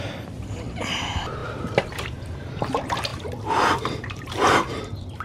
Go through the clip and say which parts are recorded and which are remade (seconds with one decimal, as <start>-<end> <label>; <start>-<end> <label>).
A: 0.0-5.2 remade